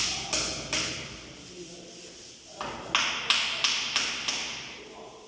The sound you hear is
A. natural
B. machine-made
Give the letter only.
A